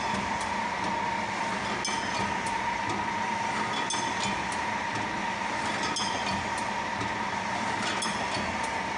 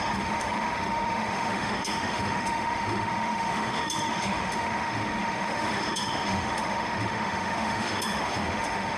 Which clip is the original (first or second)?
first